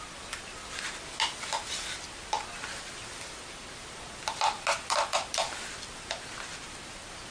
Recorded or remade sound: recorded